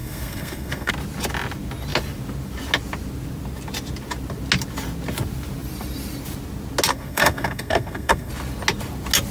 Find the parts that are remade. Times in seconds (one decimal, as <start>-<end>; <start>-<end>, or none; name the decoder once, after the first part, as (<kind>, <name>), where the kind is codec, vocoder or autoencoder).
0.0-0.9 (codec, SNAC); 6.9-8.3